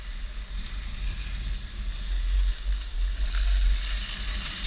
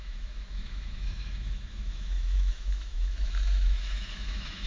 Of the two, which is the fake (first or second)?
second